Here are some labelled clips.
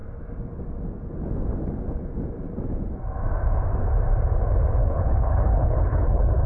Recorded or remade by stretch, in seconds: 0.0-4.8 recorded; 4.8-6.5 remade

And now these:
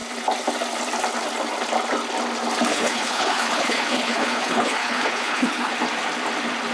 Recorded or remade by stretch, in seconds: 0.0-2.7 recorded; 2.7-5.7 remade; 5.7-6.7 recorded